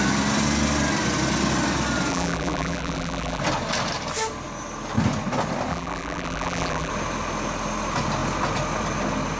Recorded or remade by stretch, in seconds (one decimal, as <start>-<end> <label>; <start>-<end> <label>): 0.0-2.1 recorded; 2.1-3.4 remade; 3.4-5.7 recorded; 5.7-6.9 remade; 6.9-9.4 recorded